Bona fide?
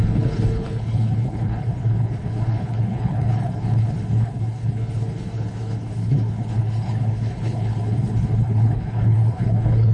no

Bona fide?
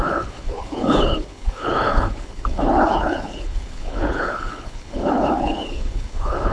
no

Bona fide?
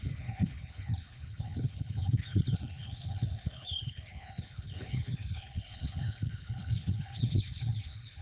no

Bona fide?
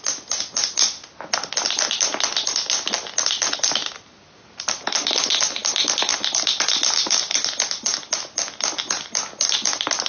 yes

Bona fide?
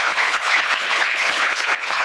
no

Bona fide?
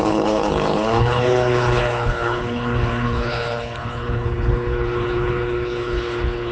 no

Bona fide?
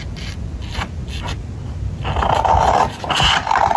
yes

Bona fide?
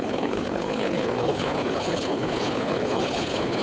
no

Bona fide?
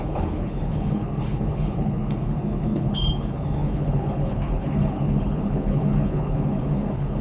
no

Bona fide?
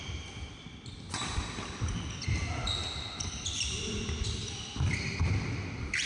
yes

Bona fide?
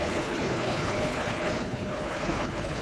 no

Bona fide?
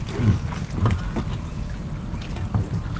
yes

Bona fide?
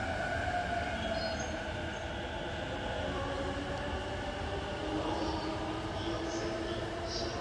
yes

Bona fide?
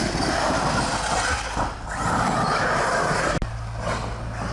yes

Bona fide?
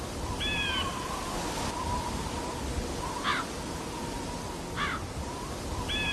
yes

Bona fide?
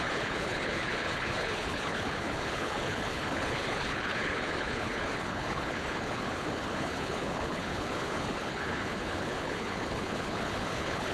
no